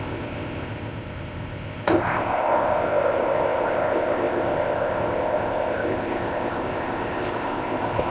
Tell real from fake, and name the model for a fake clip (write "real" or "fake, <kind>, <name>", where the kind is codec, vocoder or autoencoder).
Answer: fake, codec, ZipCodec